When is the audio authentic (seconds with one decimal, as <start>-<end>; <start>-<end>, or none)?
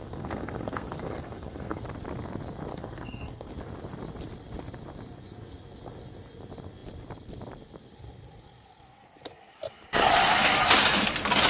1.8-2.7; 3.5-11.5